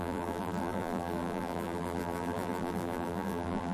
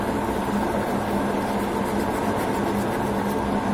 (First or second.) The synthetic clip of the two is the first